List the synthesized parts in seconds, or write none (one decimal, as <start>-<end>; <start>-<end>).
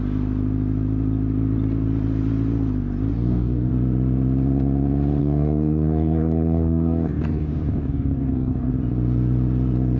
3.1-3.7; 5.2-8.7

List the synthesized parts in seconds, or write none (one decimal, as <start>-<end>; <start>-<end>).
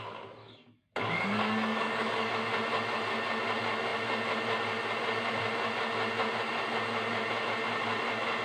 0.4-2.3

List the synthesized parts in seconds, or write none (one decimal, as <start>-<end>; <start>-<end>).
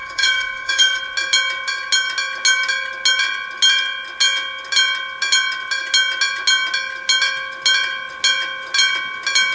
0.0-1.0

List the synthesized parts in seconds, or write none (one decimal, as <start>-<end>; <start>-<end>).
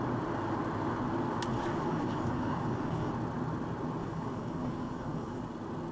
1.5-3.1; 4.0-5.4